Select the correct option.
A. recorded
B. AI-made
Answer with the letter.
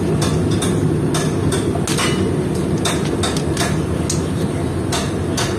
A